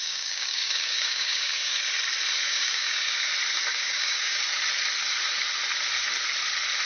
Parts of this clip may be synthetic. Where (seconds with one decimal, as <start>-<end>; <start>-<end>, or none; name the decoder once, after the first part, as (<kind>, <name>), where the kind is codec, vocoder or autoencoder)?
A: 0.0-1.8 (codec, DAC); 2.4-3.3; 3.7-4.4